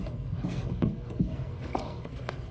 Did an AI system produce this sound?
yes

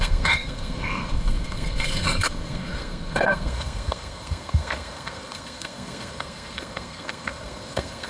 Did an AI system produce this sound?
yes